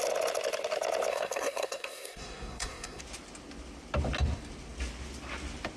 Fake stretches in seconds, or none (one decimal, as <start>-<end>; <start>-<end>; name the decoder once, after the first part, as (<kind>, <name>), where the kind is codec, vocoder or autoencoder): 1.1-3.0 (codec, SNAC)